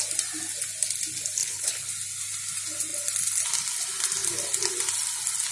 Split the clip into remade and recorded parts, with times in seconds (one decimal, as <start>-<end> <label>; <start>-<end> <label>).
0.0-1.4 recorded; 1.4-1.9 remade; 1.9-5.5 recorded

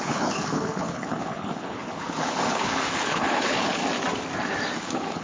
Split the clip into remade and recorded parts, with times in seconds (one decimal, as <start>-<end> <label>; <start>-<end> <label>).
0.0-3.8 remade; 3.8-4.8 recorded; 4.8-5.2 remade

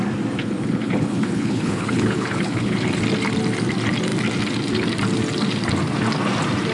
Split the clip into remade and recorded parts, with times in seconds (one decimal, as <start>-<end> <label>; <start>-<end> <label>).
0.0-0.4 recorded; 0.4-2.8 remade; 2.8-6.7 recorded

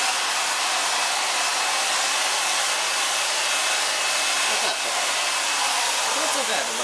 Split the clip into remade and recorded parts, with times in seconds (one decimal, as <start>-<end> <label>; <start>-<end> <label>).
0.0-6.8 recorded

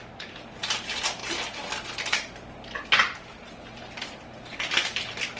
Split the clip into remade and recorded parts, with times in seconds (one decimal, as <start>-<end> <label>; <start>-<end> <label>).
0.0-5.4 recorded

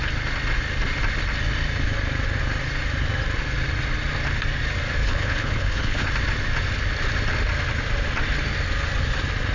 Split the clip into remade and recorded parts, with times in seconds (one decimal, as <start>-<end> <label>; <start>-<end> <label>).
0.0-5.0 recorded; 5.0-6.1 remade; 6.1-9.5 recorded